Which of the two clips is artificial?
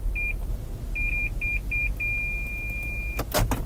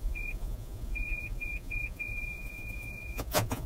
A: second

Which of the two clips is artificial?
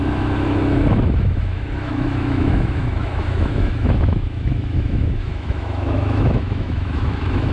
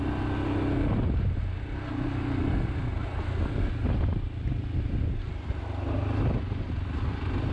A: first